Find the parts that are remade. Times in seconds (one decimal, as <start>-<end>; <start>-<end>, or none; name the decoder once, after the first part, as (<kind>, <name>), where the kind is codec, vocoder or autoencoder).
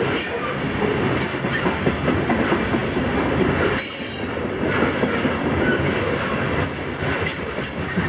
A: none